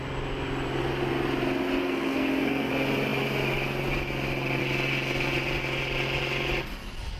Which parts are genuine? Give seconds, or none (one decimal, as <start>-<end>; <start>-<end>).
0.0-1.8; 2.7-7.2